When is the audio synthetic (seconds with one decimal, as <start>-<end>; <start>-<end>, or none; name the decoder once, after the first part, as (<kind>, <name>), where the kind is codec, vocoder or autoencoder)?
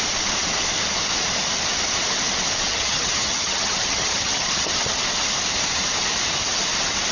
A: 2.7-4.7 (vocoder, HiFi-GAN)